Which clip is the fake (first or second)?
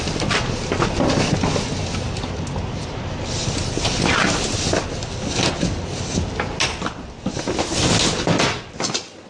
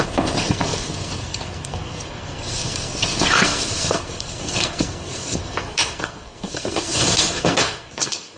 second